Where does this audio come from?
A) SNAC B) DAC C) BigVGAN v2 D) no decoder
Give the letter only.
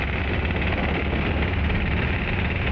D